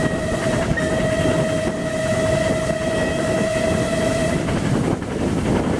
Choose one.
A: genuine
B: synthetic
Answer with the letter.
A